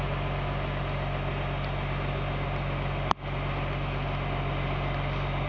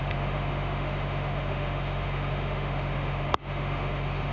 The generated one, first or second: second